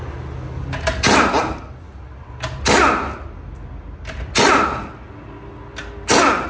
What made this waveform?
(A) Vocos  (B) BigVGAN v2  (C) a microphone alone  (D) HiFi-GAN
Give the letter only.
C